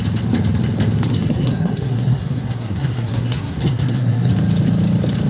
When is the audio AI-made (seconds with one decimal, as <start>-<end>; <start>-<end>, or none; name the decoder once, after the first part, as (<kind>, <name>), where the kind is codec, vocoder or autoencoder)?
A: 1.1-4.3 (codec, SNAC)